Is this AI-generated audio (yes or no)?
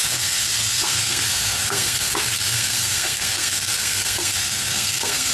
yes